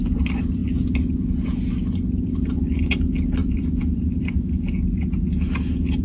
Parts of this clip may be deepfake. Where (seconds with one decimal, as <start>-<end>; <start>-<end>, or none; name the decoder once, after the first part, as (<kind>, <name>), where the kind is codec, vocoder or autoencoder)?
3.4-4.3 (vocoder, BigVGAN v2)